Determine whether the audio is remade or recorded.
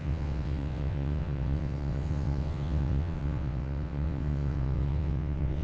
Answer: remade